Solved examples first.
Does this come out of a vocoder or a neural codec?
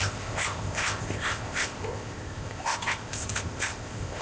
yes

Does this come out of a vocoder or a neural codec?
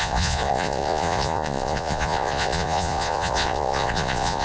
yes